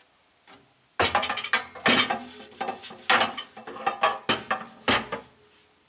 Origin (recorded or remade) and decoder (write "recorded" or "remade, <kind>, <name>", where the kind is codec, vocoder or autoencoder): recorded